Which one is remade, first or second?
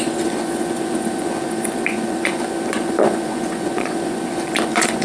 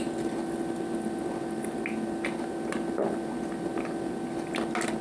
first